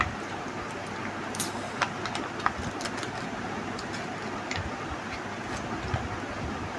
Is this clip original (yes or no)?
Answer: yes